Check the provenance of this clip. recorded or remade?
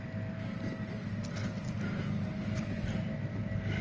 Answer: recorded